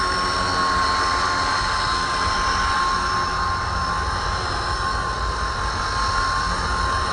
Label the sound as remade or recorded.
recorded